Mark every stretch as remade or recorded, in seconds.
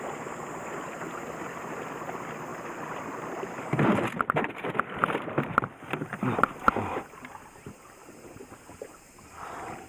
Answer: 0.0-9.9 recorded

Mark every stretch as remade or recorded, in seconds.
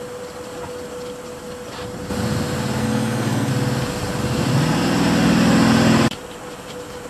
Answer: 0.0-2.8 recorded; 2.8-3.5 remade; 3.5-7.1 recorded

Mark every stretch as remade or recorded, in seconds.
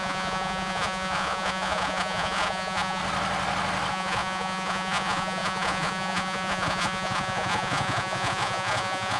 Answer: 0.0-3.0 remade; 3.0-3.9 recorded; 3.9-9.2 remade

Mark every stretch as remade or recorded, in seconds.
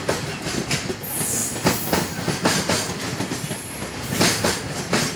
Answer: 0.0-5.2 recorded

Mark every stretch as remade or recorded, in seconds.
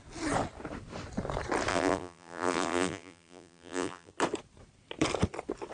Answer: 0.0-1.7 recorded; 1.7-4.1 remade; 4.1-5.7 recorded